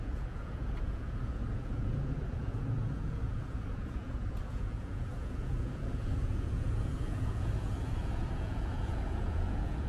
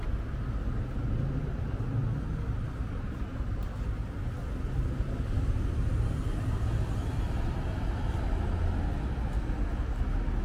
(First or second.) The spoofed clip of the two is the first